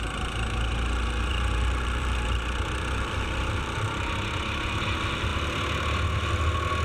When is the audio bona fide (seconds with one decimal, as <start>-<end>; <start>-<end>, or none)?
0.0-1.3; 4.8-6.8